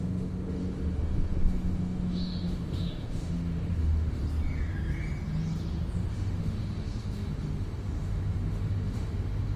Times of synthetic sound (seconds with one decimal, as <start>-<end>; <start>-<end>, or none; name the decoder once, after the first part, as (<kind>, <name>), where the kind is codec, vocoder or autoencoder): 0.0-4.2 (autoencoder, DAC-VAE); 6.1-9.6